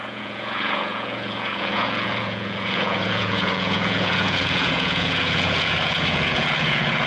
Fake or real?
fake